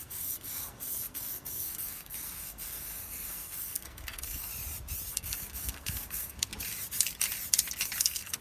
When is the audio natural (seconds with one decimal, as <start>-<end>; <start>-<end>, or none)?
4.5-5.1; 6.5-8.0